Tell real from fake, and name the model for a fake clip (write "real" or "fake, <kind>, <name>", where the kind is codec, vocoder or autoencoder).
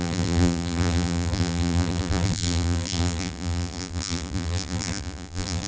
fake, vocoder, BigVGAN v2